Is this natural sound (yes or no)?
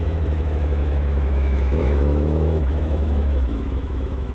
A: no